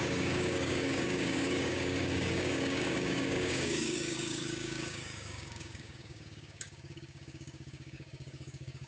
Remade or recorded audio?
remade